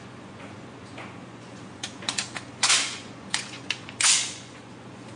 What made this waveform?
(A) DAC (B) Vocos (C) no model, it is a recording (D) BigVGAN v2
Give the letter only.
B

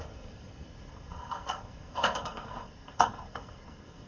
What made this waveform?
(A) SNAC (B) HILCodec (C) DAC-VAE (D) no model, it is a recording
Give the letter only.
A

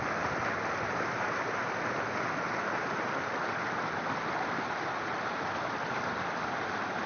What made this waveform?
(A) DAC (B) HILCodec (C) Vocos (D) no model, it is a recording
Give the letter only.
D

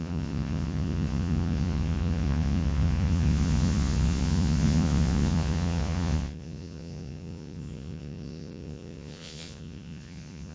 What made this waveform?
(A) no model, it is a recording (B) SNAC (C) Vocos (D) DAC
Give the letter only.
C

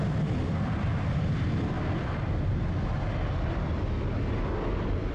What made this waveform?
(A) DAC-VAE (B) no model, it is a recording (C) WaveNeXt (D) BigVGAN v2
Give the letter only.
B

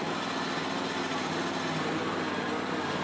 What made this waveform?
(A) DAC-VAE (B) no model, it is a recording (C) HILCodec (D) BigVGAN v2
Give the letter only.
B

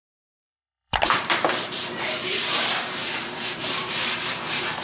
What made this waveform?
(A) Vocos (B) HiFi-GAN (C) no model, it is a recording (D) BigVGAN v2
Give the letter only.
D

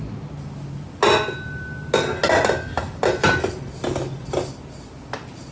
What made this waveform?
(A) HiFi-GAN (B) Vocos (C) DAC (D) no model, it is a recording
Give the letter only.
D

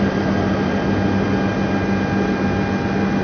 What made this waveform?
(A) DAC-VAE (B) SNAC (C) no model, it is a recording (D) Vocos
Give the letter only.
C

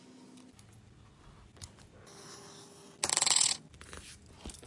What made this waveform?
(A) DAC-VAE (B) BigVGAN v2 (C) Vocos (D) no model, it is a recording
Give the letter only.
D